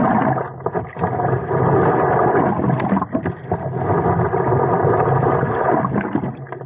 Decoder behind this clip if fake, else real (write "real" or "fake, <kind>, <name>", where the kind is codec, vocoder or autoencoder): real